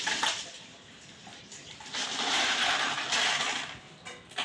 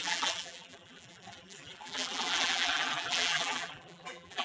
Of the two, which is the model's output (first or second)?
second